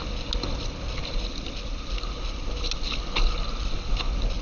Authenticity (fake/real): real